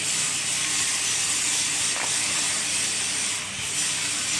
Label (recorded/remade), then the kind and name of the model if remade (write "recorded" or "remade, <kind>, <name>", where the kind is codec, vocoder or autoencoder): recorded